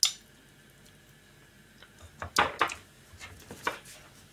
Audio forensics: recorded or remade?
recorded